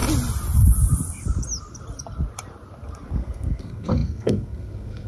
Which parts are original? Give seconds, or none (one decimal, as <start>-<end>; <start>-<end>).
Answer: 0.0-3.1